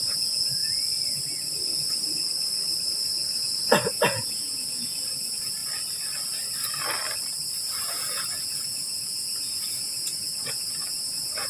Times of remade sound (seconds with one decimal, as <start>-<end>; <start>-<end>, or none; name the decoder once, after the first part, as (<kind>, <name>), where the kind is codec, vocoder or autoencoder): 0.0-0.6 (vocoder, Vocos); 3.8-5.6; 7.9-11.5